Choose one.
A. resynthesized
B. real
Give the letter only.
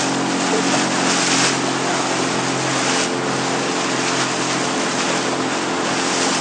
B